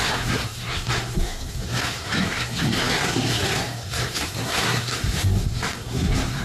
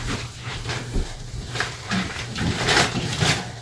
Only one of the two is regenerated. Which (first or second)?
first